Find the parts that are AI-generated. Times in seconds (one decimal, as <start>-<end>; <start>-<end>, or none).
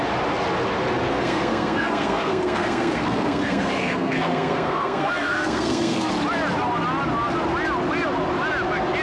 1.1-6.1